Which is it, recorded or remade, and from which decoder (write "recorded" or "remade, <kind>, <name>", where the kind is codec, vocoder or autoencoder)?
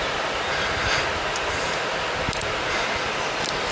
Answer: recorded